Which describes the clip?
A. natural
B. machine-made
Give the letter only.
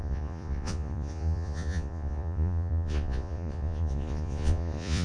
B